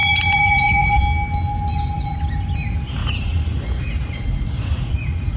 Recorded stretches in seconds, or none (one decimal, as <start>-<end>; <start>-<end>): 1.0-3.0